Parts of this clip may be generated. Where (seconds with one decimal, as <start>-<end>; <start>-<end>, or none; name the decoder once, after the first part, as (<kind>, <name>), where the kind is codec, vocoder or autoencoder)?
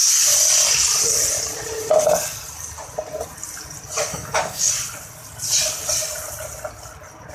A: 4.1-4.7 (codec, DAC)